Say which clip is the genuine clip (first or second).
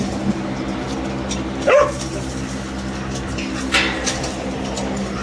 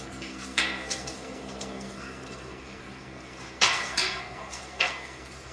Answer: first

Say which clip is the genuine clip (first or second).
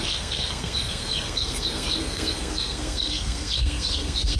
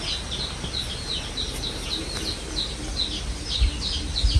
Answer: second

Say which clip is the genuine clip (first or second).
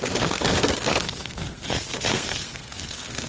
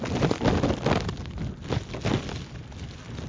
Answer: second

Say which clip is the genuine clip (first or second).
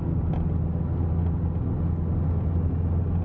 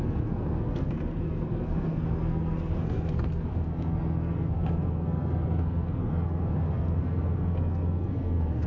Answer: first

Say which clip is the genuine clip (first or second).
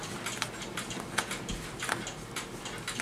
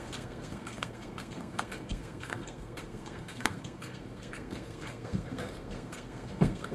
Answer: first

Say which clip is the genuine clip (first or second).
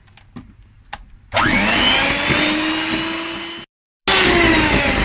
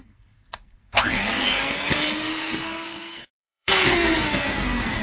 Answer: first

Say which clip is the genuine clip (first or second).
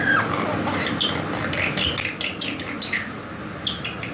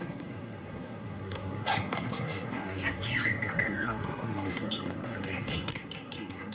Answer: first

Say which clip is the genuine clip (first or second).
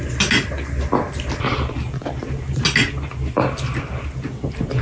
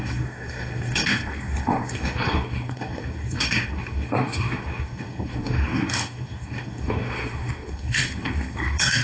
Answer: first